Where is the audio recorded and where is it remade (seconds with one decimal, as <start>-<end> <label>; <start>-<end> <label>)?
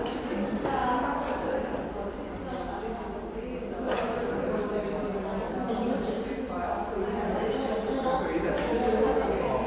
0.0-9.7 recorded